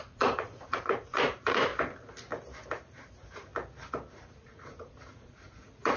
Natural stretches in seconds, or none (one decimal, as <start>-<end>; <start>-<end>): 1.7-3.1; 3.5-4.1